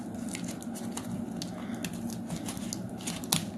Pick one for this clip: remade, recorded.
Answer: recorded